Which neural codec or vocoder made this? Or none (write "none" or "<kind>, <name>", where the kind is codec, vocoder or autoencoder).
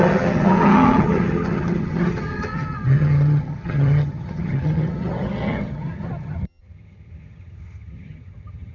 vocoder, HiFi-GAN